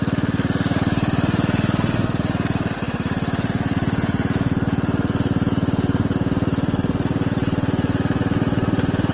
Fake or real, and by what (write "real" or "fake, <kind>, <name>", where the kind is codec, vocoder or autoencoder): real